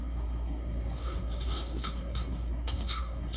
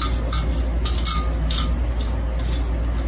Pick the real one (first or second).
second